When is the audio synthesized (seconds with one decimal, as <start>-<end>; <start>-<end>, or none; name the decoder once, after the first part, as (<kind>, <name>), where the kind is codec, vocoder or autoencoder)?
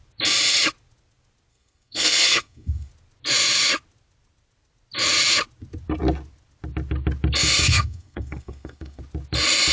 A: 1.5-2.9 (codec, SNAC); 7.6-9.0